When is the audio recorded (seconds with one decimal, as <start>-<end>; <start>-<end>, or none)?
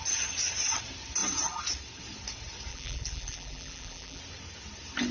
0.0-2.7; 4.2-5.1